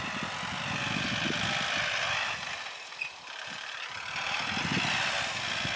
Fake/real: real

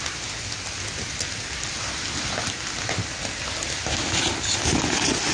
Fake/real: real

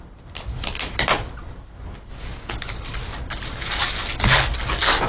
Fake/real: real